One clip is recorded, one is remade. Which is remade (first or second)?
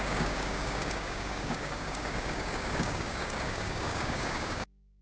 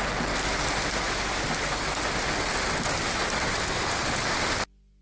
first